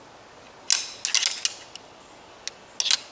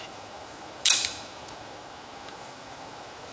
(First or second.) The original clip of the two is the first